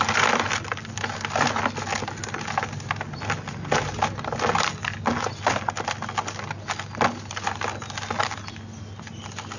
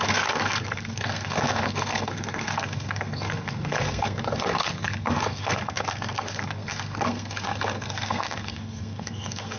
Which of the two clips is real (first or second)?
first